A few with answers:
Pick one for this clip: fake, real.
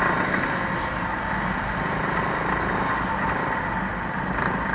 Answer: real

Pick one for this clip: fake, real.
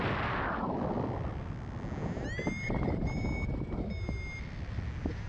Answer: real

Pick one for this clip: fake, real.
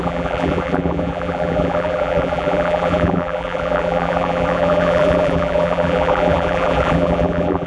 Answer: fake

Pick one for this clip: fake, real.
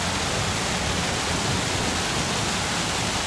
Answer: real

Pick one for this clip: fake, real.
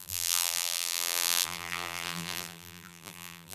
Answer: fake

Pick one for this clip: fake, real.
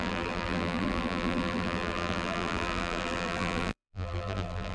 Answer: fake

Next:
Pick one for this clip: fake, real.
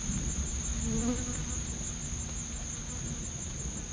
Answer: real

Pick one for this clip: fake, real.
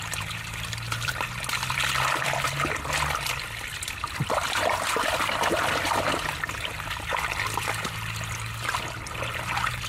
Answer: fake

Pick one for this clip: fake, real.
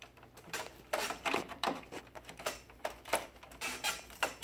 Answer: fake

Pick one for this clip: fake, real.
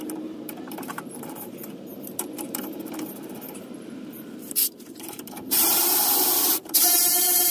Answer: fake